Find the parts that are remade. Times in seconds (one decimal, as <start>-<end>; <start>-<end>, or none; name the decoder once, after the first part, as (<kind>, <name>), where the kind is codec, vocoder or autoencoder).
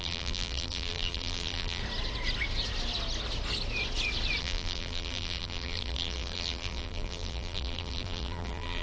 0.0-1.8 (vocoder, BigVGAN v2); 4.4-8.8